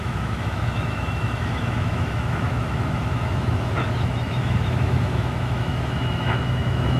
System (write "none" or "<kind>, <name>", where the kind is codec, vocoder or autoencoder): autoencoder, DAC-VAE